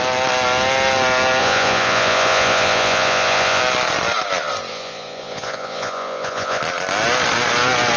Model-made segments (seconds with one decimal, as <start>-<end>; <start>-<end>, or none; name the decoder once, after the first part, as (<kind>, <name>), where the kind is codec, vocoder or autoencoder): 1.4-3.6 (vocoder, Vocos); 4.7-6.6